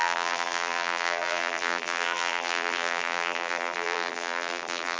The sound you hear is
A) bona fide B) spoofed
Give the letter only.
B